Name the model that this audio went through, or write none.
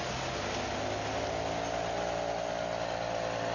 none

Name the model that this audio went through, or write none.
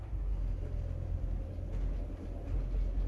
none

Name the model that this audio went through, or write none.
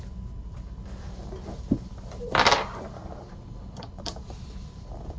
vocoder, BigVGAN v2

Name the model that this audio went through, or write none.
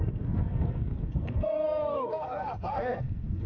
codec, SNAC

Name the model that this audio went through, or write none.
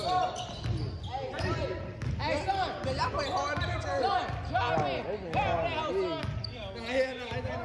none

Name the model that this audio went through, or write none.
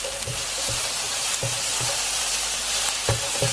vocoder, BigVGAN v2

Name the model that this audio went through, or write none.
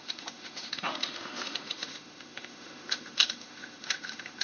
autoencoder, DAC-VAE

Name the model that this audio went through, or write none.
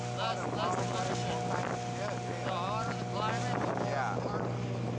none